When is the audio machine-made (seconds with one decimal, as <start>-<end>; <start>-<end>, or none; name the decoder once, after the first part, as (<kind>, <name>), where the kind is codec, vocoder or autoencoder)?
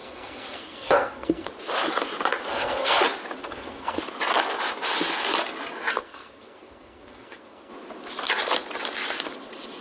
0.0-1.5 (codec, SNAC); 2.5-3.0; 3.4-4.0; 6.0-7.7